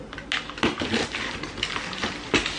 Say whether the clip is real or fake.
real